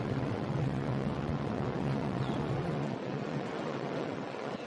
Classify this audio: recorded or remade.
remade